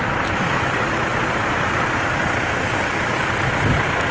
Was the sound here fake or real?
real